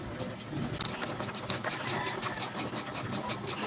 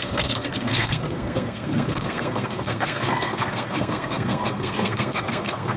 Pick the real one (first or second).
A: first